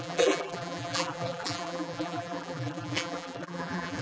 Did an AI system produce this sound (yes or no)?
yes